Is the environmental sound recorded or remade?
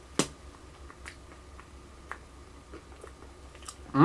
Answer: recorded